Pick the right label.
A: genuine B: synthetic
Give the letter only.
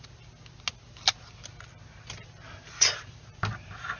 A